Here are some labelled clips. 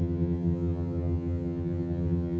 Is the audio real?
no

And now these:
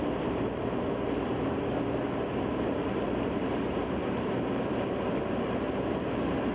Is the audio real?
no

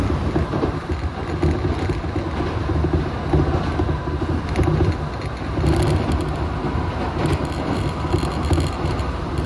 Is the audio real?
yes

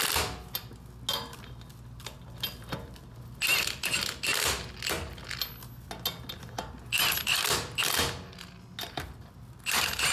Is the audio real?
yes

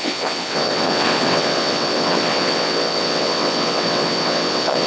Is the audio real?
no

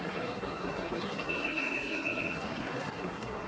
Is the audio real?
no